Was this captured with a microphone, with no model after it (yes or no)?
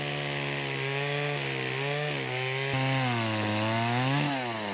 yes